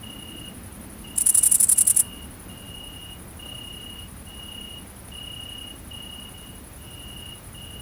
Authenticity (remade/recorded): recorded